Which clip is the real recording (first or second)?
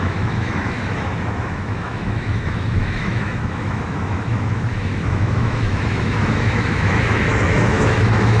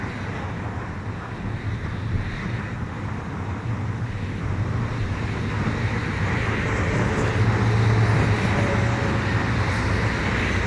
second